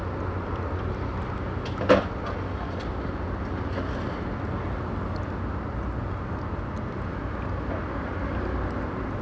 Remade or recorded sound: recorded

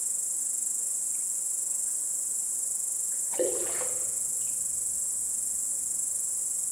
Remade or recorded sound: remade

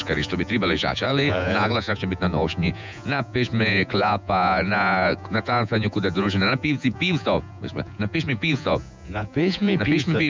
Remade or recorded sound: remade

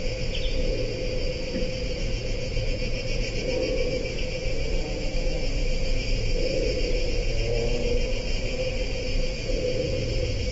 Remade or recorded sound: remade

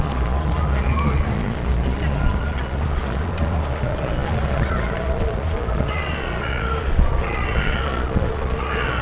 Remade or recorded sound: remade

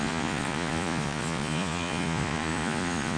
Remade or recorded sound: remade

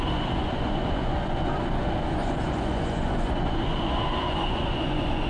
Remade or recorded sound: remade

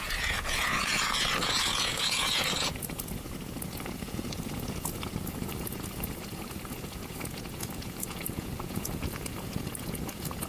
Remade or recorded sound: remade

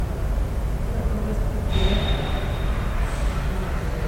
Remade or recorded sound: recorded